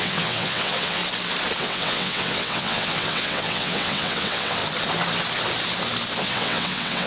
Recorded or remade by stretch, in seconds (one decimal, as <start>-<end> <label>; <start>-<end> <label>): 0.0-1.0 remade; 1.0-1.6 recorded; 1.6-4.6 remade; 4.6-6.2 recorded; 6.2-7.1 remade